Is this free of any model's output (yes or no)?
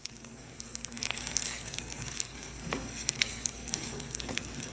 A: no